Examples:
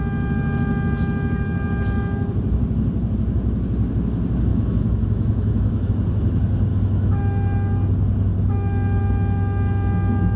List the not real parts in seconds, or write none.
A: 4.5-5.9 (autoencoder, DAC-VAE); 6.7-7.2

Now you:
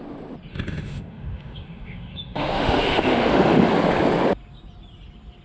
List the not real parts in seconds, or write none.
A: 0.5-3.7 (autoencoder, DAC-VAE)

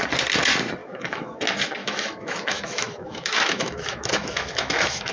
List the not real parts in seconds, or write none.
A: 0.8-1.4 (autoencoder, DAC-VAE); 1.8-5.1

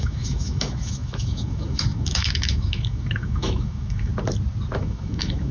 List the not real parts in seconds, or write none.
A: 0.0-4.1 (autoencoder, DAC-VAE); 4.8-5.5

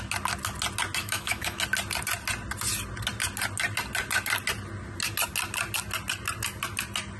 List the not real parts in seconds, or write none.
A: 1.0-1.6 (autoencoder, DAC-VAE)

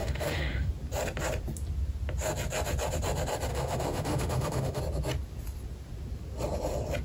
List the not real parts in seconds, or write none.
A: 0.0-0.7 (autoencoder, DAC-VAE); 3.5-4.8

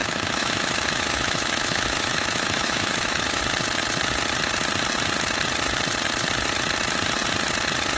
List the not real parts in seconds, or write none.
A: 0.0-3.4 (autoencoder, DAC-VAE)